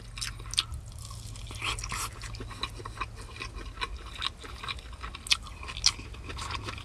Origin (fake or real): real